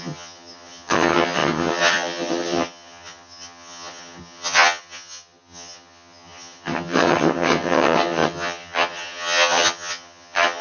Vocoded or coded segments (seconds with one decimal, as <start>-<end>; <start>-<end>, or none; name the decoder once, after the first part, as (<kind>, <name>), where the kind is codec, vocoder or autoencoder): 0.0-10.6 (vocoder, HiFi-GAN)